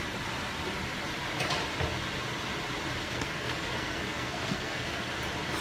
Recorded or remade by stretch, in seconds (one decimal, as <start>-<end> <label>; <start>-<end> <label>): 0.0-3.0 recorded; 3.0-5.1 remade; 5.1-5.6 recorded